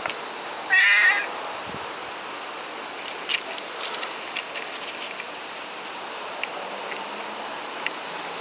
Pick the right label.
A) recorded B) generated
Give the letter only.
A